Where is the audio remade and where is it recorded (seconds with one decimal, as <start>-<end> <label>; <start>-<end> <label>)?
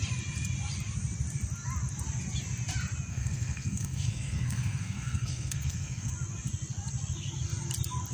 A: 0.0-3.1 recorded; 3.1-6.1 remade; 6.1-8.1 recorded